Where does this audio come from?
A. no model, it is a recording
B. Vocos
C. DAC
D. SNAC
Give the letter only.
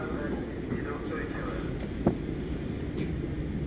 A